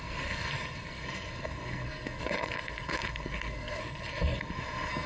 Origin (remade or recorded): remade